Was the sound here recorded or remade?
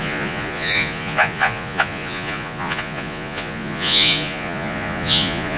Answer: remade